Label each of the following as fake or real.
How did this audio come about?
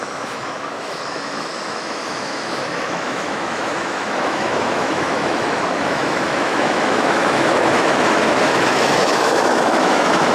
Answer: fake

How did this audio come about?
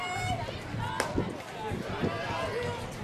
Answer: real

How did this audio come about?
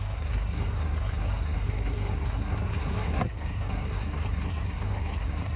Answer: fake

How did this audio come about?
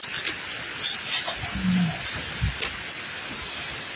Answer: real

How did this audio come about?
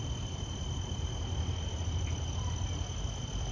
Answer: real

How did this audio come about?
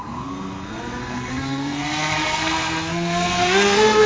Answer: fake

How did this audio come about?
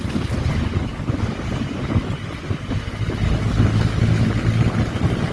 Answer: real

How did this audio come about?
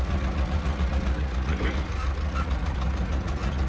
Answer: fake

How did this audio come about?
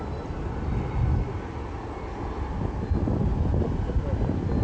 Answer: real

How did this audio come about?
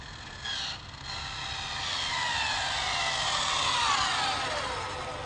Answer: real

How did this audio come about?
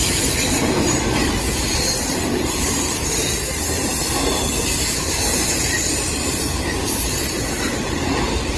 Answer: fake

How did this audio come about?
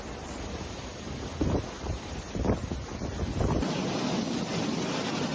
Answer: real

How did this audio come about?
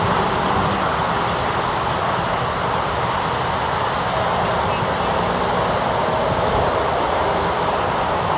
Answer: real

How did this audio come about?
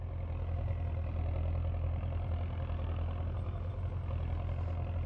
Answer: real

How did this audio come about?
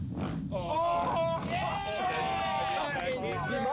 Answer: real